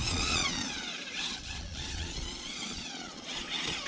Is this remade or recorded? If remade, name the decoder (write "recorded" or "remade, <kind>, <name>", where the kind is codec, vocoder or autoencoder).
remade, vocoder, Vocos